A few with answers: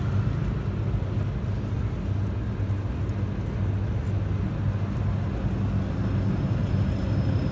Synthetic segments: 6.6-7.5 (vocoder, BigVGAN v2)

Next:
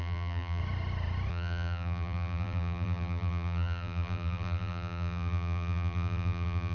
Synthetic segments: 0.0-0.6 (vocoder, BigVGAN v2); 1.3-6.7

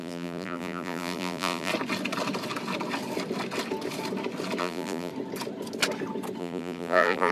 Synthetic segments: 0.0-1.7 (vocoder, BigVGAN v2); 4.6-5.1; 6.4-7.3

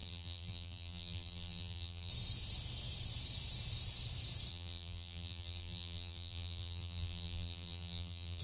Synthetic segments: 0.0-2.1 (vocoder, BigVGAN v2); 4.5-8.4

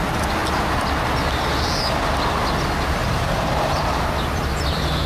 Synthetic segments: 3.0-4.0 (vocoder, BigVGAN v2)

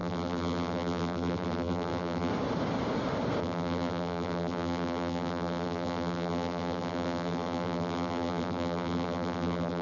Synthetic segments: 0.0-2.3 (vocoder, BigVGAN v2); 3.4-9.8

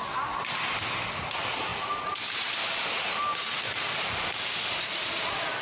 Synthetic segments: 1.7-5.1 (vocoder, BigVGAN v2)